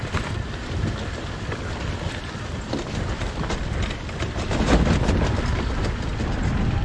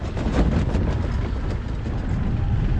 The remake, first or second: first